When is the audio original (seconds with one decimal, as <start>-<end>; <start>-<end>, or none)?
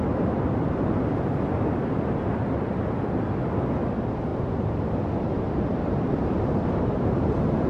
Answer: 0.0-4.3